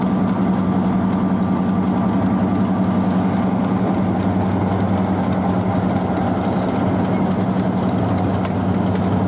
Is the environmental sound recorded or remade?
recorded